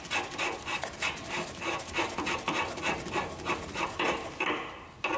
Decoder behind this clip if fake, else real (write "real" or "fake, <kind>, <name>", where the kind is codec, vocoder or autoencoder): real